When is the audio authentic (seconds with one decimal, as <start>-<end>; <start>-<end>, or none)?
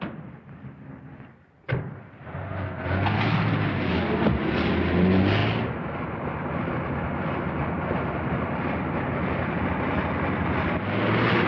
0.0-11.5